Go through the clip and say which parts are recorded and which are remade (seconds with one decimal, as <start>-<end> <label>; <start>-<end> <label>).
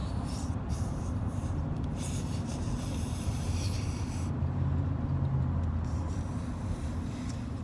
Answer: 0.0-4.6 remade; 4.6-7.6 recorded